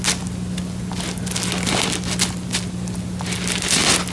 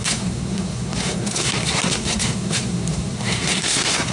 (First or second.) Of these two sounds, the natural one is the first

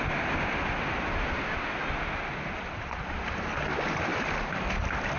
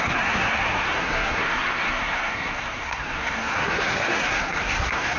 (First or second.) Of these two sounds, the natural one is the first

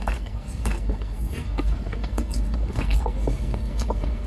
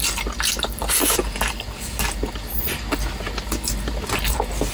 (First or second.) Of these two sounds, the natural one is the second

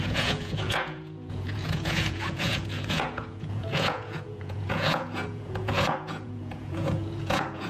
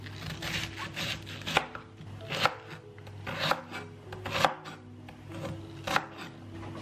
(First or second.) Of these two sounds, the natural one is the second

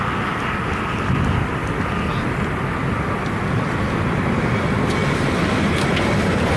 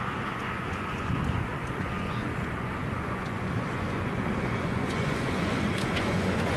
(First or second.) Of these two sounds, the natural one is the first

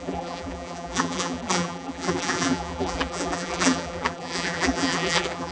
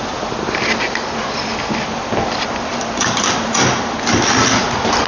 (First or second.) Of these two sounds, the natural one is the second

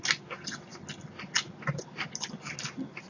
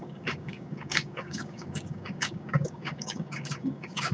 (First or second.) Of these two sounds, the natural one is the first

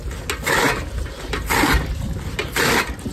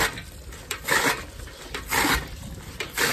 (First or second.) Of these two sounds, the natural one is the first